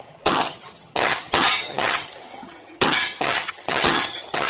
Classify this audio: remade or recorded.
remade